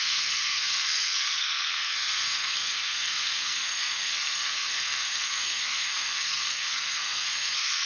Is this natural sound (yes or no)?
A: no